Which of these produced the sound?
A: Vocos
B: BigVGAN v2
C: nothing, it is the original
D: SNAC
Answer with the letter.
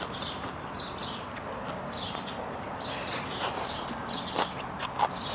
C